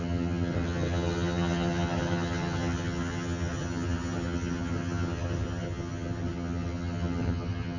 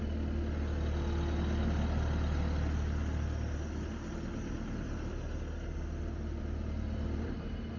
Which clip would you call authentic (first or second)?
second